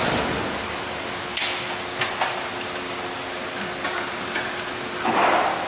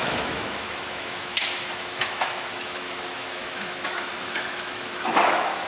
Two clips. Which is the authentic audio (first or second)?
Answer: first